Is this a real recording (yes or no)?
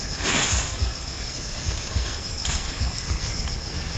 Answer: no